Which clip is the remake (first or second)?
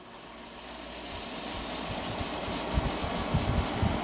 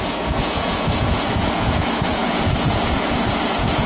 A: second